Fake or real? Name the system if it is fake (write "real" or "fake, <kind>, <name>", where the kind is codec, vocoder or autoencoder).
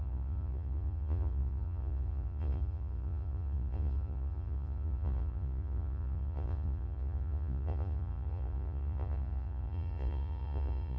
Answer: fake, vocoder, Vocos